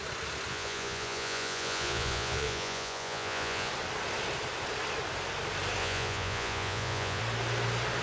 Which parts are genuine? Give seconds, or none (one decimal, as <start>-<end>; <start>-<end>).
0.0-0.5; 3.7-5.8; 7.2-8.0

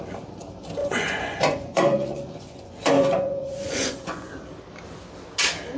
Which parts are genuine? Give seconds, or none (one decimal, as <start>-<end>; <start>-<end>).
0.0-0.8; 4.3-5.8

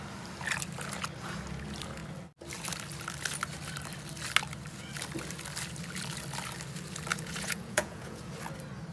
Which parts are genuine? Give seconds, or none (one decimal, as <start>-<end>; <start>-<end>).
0.0-7.1; 8.3-8.9

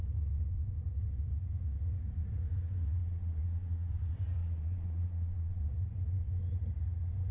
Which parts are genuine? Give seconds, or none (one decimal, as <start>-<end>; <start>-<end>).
0.0-3.0; 3.9-4.4; 5.6-7.3

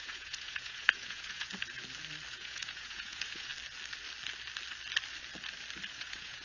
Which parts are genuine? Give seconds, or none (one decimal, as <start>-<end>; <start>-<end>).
1.5-2.3; 3.5-5.9

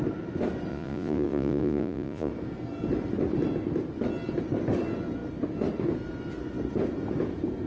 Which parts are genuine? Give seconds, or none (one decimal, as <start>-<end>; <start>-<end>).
0.0-0.7; 2.3-7.7

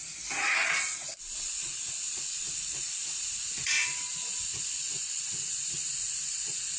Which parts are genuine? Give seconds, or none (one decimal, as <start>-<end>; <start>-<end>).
3.3-6.8

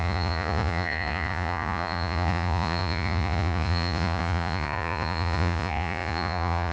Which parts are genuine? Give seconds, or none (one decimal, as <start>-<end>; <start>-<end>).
none